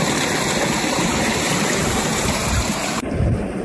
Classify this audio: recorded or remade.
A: remade